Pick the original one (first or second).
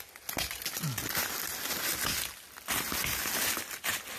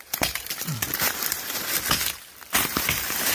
first